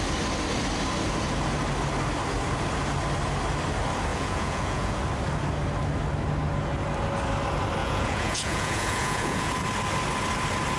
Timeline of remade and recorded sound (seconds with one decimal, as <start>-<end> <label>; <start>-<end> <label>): 0.0-4.1 recorded; 4.1-5.0 remade; 5.0-7.8 recorded; 7.8-9.5 remade; 9.5-10.8 recorded